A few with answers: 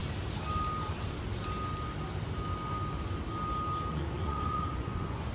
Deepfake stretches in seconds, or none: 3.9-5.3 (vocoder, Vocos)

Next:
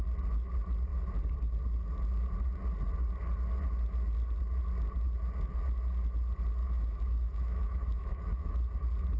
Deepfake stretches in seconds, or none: 6.6-8.5 (autoencoder, DAC-VAE)

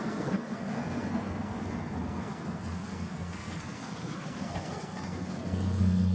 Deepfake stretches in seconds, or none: 0.0-6.1 (codec, SNAC)

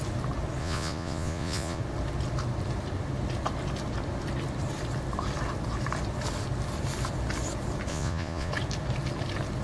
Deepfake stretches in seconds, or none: 0.6-1.8 (vocoder, Vocos); 7.9-8.5

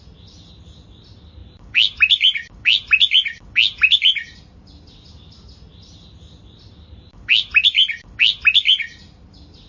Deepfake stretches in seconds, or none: none

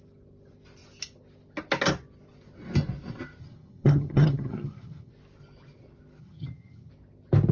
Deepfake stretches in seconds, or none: 3.4-5.1 (vocoder, HiFi-GAN); 6.2-6.9

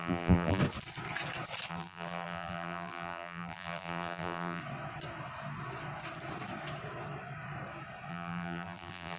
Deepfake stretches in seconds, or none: 0.0-0.6 (vocoder, BigVGAN v2); 1.7-4.6; 8.1-9.2